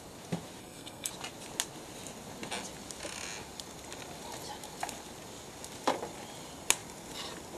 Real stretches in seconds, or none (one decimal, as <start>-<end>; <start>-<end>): 0.0-0.6; 1.1-7.6